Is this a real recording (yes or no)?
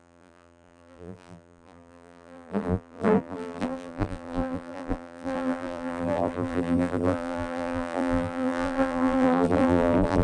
no